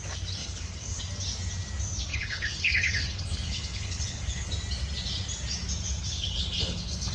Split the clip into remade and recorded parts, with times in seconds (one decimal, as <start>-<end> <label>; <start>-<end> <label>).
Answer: 0.0-0.4 recorded; 0.4-1.0 remade; 1.0-2.1 recorded; 2.1-4.5 remade; 4.5-6.0 recorded; 6.0-7.1 remade